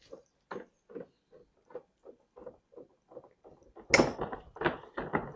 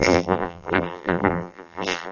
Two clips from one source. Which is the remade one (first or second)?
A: second